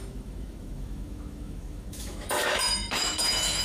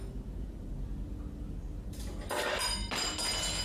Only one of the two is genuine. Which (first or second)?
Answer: second